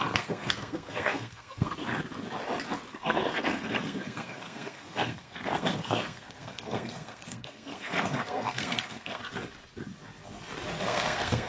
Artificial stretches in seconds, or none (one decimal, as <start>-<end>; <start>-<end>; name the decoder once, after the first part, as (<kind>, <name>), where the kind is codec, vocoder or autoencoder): 0.0-1.8 (codec, SNAC); 2.9-9.2; 10.8-11.5